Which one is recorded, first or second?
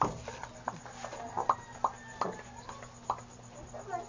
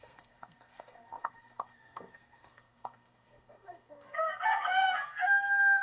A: first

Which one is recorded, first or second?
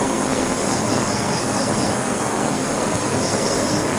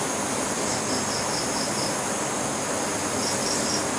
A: second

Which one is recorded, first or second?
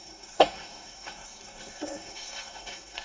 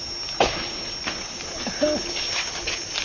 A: second